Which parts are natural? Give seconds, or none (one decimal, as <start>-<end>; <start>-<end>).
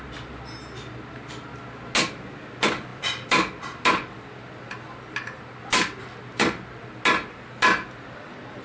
0.0-8.6